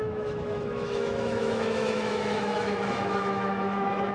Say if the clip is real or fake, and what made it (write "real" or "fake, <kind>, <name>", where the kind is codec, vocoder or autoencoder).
fake, autoencoder, DAC-VAE